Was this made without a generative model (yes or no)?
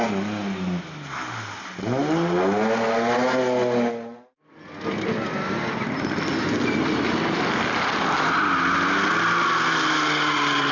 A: yes